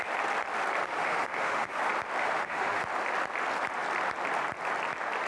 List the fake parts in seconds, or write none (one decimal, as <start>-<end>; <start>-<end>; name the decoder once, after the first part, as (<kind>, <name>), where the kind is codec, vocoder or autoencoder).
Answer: 0.8-1.8 (autoencoder, DAC-VAE); 2.2-2.8